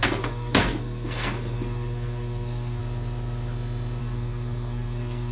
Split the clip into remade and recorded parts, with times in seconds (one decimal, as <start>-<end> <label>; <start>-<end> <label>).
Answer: 0.0-2.8 remade; 2.8-4.0 recorded; 4.0-5.3 remade